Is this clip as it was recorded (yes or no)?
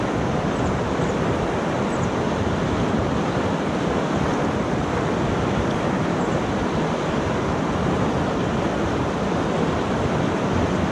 yes